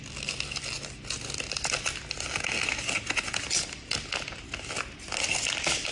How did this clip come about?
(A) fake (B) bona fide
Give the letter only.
B